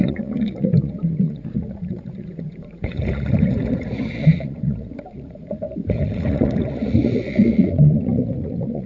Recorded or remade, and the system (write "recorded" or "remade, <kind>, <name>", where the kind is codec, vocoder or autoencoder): remade, vocoder, Vocos